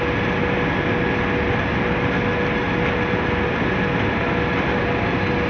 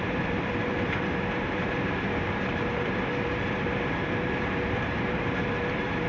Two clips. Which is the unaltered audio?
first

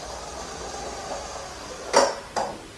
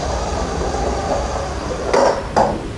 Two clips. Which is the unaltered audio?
first